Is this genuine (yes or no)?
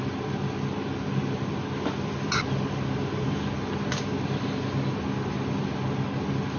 yes